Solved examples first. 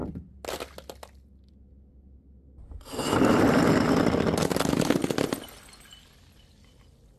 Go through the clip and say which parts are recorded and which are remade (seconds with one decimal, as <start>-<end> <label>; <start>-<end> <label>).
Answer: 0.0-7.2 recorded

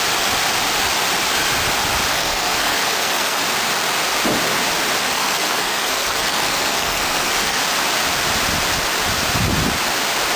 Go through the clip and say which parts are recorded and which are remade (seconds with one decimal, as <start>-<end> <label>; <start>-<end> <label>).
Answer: 0.0-2.1 recorded; 2.1-3.4 remade; 3.4-5.0 recorded; 5.0-7.6 remade; 7.6-10.4 recorded

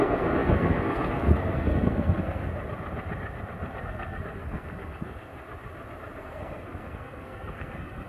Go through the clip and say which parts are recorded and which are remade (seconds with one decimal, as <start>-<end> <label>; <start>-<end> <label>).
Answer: 0.0-2.5 remade; 2.5-3.8 recorded; 3.8-5.3 remade; 5.3-6.2 recorded; 6.2-8.1 remade

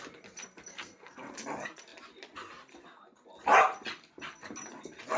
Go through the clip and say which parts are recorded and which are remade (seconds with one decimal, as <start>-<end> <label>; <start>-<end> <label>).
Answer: 0.0-0.7 recorded; 0.7-1.3 remade; 1.3-5.2 recorded

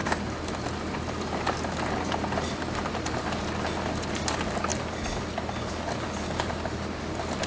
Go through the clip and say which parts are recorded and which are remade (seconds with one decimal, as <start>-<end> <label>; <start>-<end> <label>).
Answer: 0.0-7.5 recorded

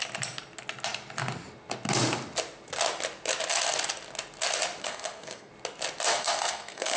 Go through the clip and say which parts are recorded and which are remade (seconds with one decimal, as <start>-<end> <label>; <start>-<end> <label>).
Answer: 0.0-4.8 recorded; 4.8-5.5 remade; 5.5-6.1 recorded; 6.1-7.0 remade

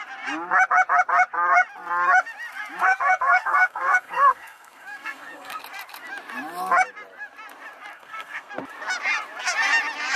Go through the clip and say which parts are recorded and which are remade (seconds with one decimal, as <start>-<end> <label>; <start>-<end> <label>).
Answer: 0.0-2.8 recorded; 2.8-5.6 remade; 5.6-7.9 recorded; 7.9-8.5 remade; 8.5-10.2 recorded

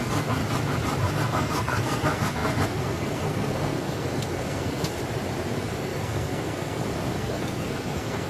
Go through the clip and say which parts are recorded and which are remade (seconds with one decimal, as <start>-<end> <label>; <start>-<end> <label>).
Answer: 0.0-0.4 remade; 0.4-1.1 recorded; 1.1-5.0 remade; 5.0-5.6 recorded; 5.6-8.3 remade